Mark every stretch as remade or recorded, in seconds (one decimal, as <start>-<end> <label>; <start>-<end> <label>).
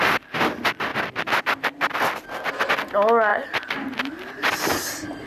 0.0-0.9 recorded; 0.9-2.7 remade; 2.7-3.3 recorded; 3.3-4.6 remade; 4.6-5.3 recorded